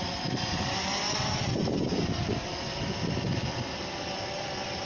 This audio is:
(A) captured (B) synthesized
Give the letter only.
A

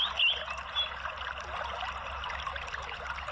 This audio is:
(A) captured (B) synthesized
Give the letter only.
A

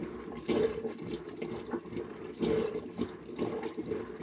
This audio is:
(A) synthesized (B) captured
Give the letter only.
B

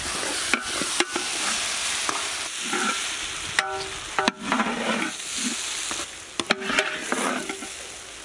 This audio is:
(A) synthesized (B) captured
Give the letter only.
B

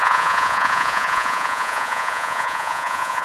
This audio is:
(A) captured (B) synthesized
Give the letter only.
B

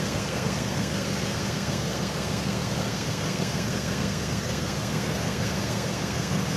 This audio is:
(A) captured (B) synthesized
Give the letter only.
B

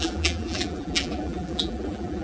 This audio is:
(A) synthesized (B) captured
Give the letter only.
A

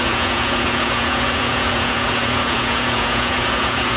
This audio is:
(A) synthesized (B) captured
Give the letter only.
A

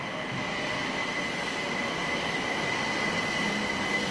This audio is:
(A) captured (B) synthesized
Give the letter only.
A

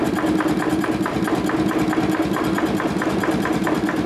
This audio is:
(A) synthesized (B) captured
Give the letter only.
B